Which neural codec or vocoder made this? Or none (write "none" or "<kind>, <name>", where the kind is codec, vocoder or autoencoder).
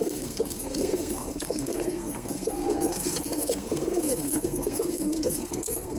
codec, SNAC